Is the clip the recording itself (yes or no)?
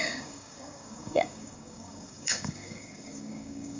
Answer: no